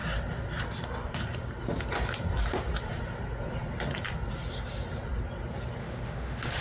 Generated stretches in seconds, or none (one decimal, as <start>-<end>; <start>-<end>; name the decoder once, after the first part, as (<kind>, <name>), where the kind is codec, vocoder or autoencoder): 5.8-6.6 (autoencoder, DAC-VAE)